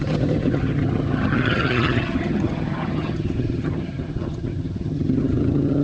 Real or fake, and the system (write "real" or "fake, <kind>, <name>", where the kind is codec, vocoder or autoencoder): fake, vocoder, HiFi-GAN